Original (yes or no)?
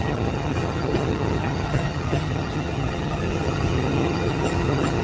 no